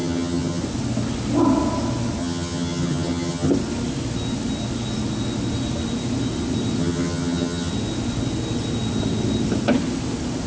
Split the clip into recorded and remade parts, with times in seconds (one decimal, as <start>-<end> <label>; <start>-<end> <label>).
0.0-0.6 remade; 0.6-2.2 recorded; 2.2-3.5 remade; 3.5-6.8 recorded; 6.8-7.7 remade; 7.7-10.5 recorded